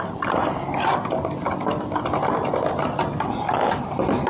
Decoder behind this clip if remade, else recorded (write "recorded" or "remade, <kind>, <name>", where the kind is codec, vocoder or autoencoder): recorded